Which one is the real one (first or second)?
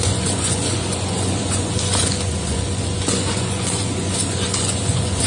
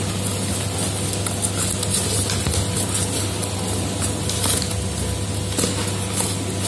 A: second